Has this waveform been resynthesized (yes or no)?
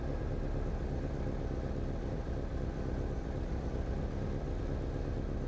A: no